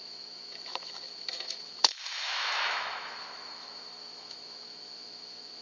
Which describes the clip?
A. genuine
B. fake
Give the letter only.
B